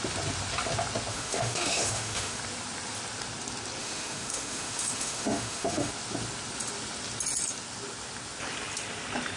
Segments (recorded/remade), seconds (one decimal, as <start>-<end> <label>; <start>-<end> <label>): 0.0-1.1 recorded; 1.1-2.4 remade; 2.4-3.8 recorded; 3.8-5.9 remade; 5.9-9.4 recorded